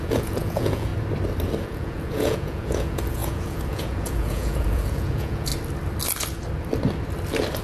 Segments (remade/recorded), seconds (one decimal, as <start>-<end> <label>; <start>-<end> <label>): 0.0-0.9 remade; 0.9-1.6 recorded; 1.6-5.5 remade; 5.5-7.6 recorded